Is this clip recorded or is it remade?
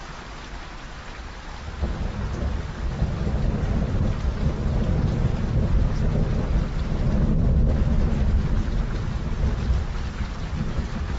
remade